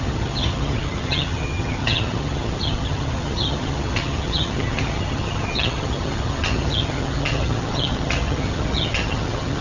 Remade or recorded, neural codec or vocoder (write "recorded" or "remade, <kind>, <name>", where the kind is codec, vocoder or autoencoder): remade, vocoder, HiFi-GAN